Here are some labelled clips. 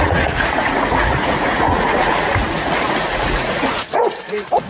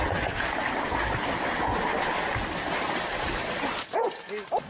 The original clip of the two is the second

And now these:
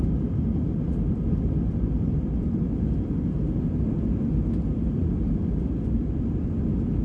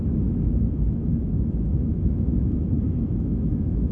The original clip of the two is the first